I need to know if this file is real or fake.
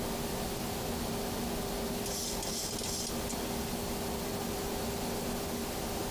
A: real